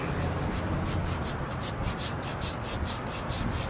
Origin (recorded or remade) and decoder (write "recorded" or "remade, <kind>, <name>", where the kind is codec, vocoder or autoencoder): recorded